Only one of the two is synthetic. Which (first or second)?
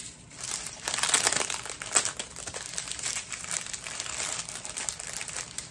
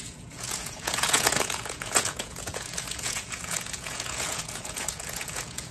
second